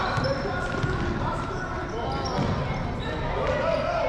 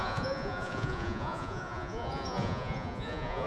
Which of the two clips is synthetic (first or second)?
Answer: second